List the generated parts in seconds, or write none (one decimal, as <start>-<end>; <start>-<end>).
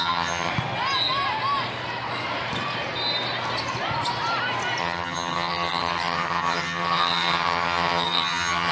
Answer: 0.0-0.5; 4.8-8.7